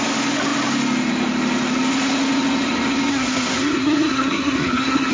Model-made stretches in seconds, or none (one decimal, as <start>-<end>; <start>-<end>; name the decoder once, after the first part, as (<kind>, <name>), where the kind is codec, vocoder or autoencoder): 3.1-5.1 (codec, SNAC)